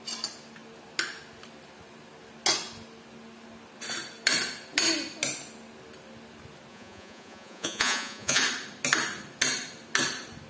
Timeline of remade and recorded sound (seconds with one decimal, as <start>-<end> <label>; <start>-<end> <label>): 0.0-6.7 recorded; 6.7-8.4 remade; 8.4-10.5 recorded